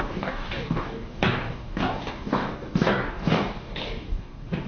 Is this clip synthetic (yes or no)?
yes